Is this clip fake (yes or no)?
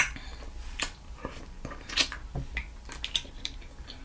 no